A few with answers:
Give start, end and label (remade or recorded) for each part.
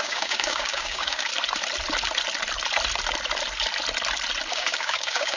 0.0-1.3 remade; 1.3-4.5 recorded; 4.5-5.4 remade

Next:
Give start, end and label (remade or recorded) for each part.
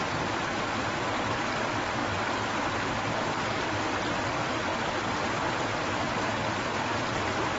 0.0-2.0 recorded; 2.0-3.2 remade; 3.2-7.6 recorded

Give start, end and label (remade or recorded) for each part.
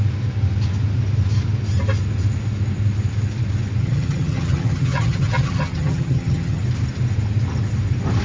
0.0-3.8 recorded; 3.8-6.6 remade; 6.6-8.2 recorded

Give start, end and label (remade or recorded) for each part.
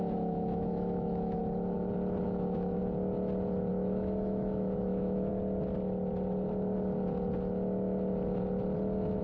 0.0-1.4 remade; 1.4-2.2 recorded; 2.2-2.8 remade; 2.8-3.7 recorded; 3.7-5.3 remade; 5.3-9.2 recorded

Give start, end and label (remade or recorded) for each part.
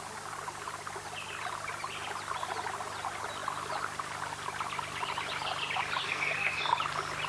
0.0-6.0 recorded; 6.0-6.6 remade; 6.6-7.3 recorded